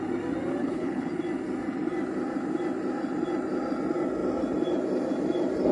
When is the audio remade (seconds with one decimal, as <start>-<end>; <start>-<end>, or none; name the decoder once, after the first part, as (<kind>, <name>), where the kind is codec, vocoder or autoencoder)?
0.6-1.1 (codec, HILCodec)